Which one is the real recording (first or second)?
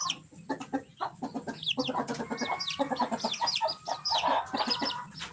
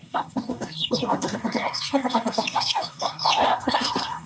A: first